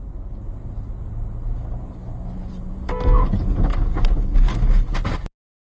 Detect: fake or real real